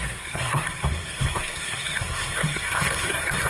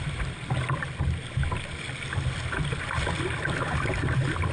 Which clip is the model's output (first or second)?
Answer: first